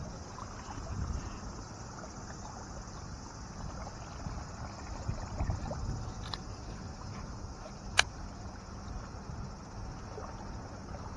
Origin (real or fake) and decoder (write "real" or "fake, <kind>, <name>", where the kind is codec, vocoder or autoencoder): real